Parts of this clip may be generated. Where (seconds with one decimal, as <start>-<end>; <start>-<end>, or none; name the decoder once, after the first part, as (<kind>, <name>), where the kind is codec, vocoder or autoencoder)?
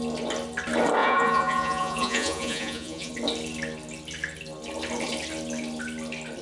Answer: 1.0-3.1 (vocoder, Vocos)